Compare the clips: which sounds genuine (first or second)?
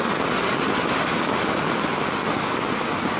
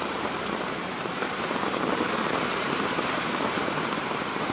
first